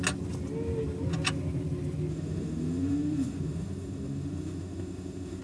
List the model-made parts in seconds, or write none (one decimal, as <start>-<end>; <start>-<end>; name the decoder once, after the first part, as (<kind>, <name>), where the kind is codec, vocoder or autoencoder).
2.1-5.4 (autoencoder, DAC-VAE)

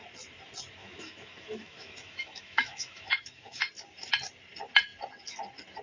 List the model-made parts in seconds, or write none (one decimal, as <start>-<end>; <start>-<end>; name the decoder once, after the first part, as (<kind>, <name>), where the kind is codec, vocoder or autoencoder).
0.8-3.6 (autoencoder, DAC-VAE)

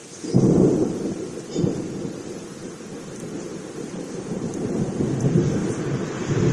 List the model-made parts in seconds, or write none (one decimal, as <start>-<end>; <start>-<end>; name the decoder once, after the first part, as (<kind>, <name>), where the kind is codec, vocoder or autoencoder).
none

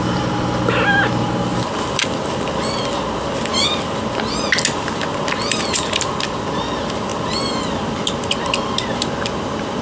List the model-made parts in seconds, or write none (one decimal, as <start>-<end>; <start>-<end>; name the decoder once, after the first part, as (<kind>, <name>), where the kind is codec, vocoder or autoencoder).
none

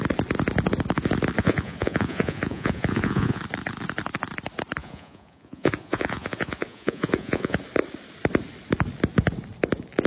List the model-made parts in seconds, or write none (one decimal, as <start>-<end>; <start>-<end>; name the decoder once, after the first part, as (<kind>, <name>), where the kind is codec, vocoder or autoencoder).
1.4-3.4 (vocoder, Vocos); 4.8-7.6